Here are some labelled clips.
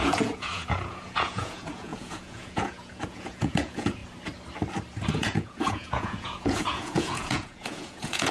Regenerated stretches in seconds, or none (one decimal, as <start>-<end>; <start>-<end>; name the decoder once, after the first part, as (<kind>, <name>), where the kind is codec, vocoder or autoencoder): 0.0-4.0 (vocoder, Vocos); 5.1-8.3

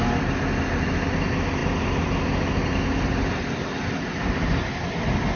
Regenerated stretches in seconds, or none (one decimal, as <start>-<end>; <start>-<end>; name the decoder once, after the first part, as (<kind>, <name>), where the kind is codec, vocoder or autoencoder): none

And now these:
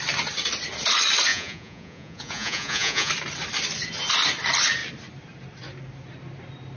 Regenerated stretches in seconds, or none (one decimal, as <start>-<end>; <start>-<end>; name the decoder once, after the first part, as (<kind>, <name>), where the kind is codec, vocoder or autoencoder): 1.3-3.1 (vocoder, Vocos)

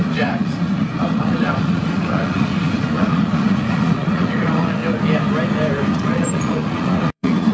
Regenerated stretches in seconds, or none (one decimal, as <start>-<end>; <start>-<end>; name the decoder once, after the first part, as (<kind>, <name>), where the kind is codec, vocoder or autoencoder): 0.0-4.8 (vocoder, Vocos); 5.9-7.5

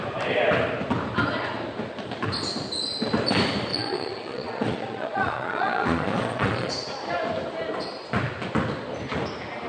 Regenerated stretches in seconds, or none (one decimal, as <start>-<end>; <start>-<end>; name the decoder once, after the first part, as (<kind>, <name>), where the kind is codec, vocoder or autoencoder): 3.7-6.7 (vocoder, Vocos)

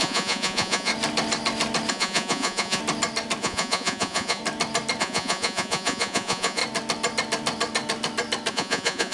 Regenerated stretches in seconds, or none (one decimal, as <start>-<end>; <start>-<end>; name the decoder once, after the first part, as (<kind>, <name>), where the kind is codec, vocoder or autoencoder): 0.0-0.9 (vocoder, Vocos); 1.9-2.8; 3.4-4.4; 5.0-6.6; 8.5-9.1

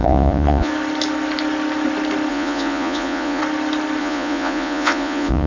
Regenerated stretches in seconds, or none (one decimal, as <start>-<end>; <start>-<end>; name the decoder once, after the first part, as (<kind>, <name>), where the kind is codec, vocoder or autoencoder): 0.0-0.7 (vocoder, Vocos); 2.3-3.4; 4.0-5.5

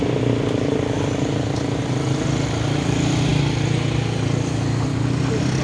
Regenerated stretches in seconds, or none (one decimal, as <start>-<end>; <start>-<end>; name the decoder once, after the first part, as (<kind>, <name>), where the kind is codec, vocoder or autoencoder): none